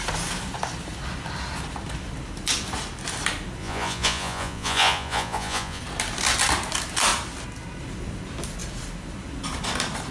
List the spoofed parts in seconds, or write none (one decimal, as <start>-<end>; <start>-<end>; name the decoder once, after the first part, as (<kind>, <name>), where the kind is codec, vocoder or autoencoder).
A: 3.6-5.8 (vocoder, Vocos)